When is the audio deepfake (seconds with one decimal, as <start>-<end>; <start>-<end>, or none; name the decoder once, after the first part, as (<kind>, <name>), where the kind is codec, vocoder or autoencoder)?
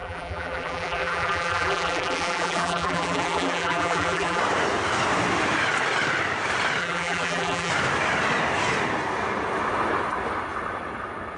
0.0-4.4 (vocoder, BigVGAN v2); 6.8-7.7